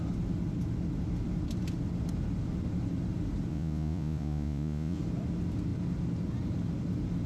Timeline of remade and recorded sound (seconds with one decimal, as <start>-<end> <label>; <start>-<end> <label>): 0.0-3.5 recorded; 3.5-5.0 remade; 5.0-7.3 recorded